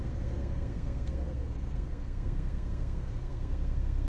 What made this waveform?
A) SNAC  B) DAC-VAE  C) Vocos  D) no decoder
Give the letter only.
A